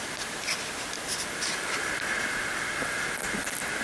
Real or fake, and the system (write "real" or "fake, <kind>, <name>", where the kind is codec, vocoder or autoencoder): real